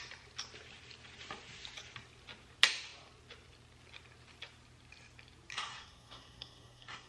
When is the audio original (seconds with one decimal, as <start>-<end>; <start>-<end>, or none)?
0.0-5.5